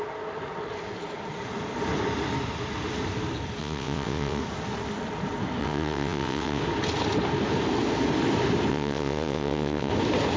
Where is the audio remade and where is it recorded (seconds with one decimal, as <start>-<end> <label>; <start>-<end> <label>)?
0.0-3.6 recorded; 3.6-4.4 remade; 4.4-5.6 recorded; 5.6-6.6 remade; 6.6-8.7 recorded; 8.7-9.9 remade; 9.9-10.4 recorded